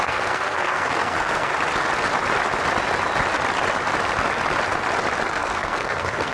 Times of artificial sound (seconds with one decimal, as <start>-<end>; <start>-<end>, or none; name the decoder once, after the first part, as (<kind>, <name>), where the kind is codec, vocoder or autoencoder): 0.0-1.5 (codec, SNAC); 5.3-6.3